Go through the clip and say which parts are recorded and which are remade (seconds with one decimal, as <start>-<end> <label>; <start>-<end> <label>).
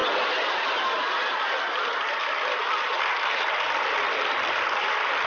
0.0-5.3 recorded